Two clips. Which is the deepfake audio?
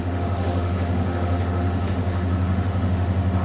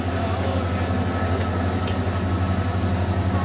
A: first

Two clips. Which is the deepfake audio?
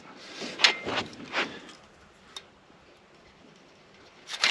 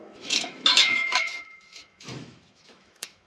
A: second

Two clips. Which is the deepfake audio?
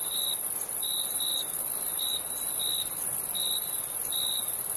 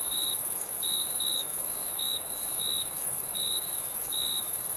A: second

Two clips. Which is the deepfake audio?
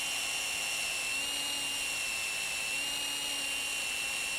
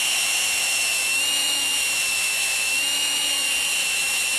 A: second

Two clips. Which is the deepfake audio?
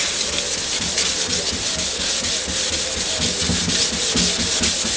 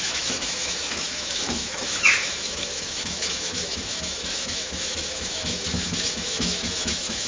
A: second